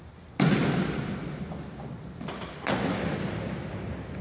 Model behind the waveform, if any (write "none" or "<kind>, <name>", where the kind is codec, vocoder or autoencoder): none